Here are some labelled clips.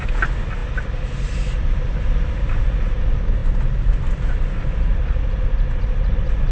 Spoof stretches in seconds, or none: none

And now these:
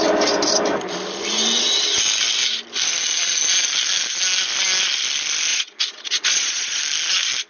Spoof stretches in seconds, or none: 5.5-6.8 (vocoder, Vocos)

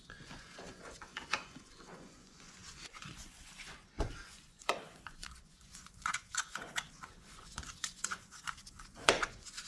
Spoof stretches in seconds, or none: 0.0-9.7 (vocoder, Vocos)

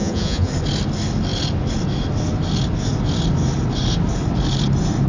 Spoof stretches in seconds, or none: 0.0-0.5 (vocoder, Vocos)

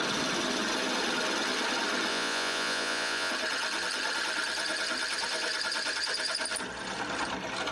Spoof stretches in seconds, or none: 2.1-3.3 (vocoder, Vocos)